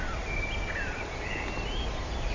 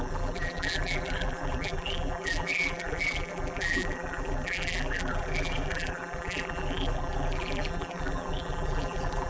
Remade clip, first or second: second